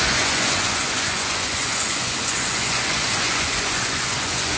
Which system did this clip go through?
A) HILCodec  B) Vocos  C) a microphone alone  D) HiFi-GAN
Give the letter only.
B